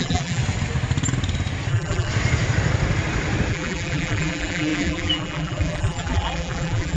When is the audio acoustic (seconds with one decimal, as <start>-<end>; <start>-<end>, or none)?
0.4-1.7; 2.1-3.5